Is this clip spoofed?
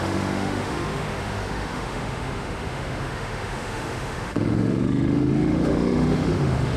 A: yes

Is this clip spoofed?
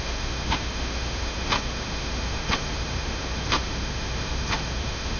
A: yes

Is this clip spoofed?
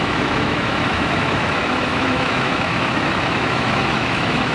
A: yes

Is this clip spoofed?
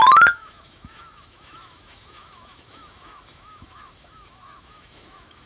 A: yes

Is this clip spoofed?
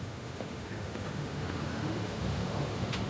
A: yes